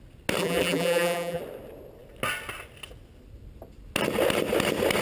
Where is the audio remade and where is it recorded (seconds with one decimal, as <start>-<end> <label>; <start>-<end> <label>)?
0.0-0.4 recorded; 0.4-1.4 remade; 1.4-5.0 recorded